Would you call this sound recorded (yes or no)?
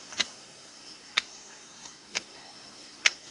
no